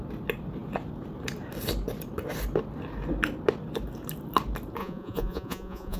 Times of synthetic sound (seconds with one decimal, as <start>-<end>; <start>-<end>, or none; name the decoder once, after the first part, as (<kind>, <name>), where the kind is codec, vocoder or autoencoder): 4.8-6.0 (vocoder, Vocos)